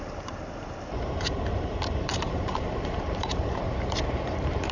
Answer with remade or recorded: remade